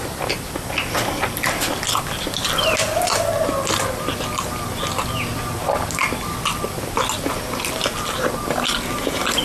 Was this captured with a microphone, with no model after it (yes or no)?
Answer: yes